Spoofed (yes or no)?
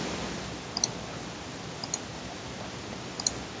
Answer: no